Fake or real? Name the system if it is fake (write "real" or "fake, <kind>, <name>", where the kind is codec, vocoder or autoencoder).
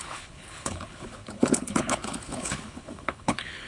fake, codec, HILCodec